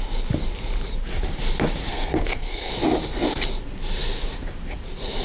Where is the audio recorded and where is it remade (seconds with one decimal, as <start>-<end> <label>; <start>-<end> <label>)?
0.0-1.9 recorded; 1.9-2.7 remade; 2.7-5.2 recorded